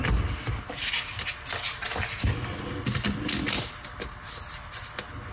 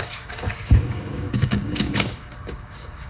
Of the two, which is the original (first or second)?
first